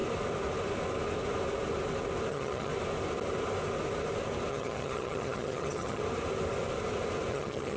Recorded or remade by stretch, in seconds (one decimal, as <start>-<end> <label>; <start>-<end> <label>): 0.0-2.3 recorded; 2.3-2.7 remade; 2.7-4.5 recorded; 4.5-6.0 remade; 6.0-7.3 recorded; 7.3-7.8 remade